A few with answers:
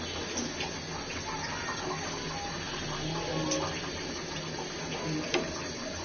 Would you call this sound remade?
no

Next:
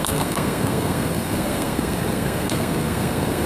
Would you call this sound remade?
yes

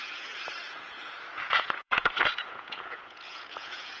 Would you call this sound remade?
yes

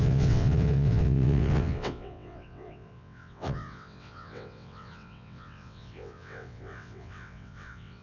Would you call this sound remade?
yes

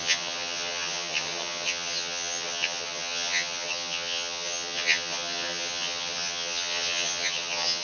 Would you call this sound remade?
yes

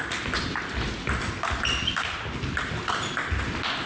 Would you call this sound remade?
no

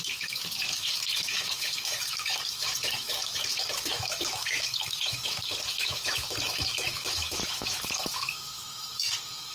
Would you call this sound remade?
yes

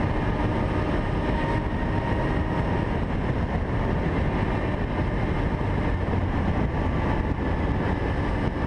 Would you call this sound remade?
no